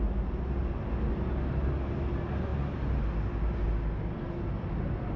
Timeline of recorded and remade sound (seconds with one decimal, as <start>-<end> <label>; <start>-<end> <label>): 0.0-5.2 recorded